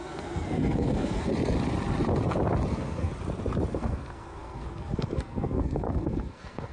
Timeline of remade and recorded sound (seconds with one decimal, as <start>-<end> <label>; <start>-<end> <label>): 0.0-1.3 remade; 1.3-2.7 recorded; 2.7-3.1 remade; 3.1-3.7 recorded; 3.7-6.7 remade